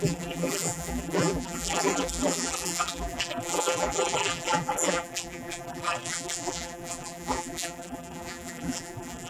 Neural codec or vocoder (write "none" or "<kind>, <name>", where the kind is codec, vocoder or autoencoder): vocoder, BigVGAN v2